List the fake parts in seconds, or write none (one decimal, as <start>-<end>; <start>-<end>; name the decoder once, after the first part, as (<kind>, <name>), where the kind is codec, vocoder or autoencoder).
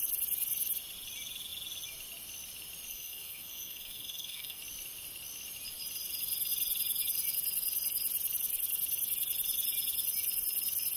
2.9-4.6 (codec, SNAC)